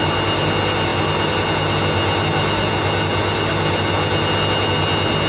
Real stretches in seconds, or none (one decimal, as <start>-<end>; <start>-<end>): 0.0-5.3